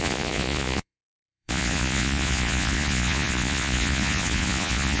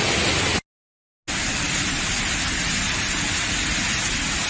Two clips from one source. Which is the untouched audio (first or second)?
second